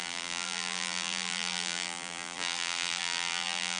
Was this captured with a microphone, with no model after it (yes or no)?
no